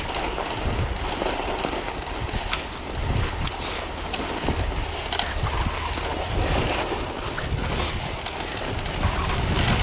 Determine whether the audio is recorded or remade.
recorded